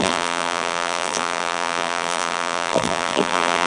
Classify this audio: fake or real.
fake